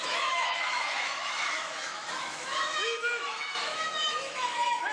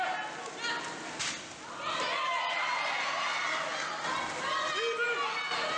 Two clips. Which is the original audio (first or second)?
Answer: second